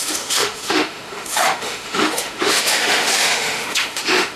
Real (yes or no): no